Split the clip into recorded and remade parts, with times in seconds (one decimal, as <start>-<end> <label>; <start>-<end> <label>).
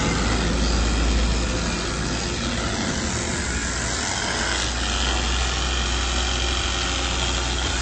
0.0-7.8 recorded